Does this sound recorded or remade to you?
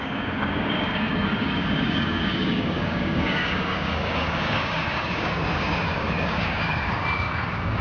remade